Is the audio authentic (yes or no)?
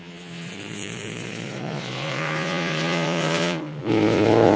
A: no